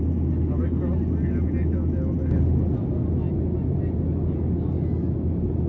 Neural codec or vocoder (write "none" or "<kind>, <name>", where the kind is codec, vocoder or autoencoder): none